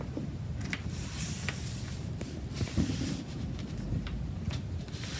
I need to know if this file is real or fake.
real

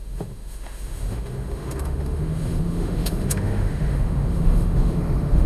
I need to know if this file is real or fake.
fake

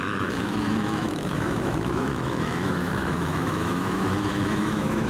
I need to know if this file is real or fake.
fake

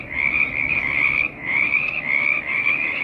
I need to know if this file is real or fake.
fake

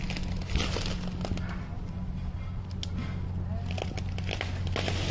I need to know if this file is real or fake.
real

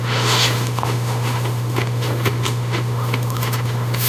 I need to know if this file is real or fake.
fake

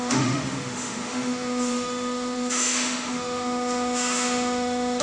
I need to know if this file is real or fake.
fake